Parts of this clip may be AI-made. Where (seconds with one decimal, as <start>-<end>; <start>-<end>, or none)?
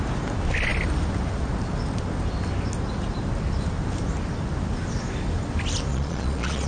5.9-6.7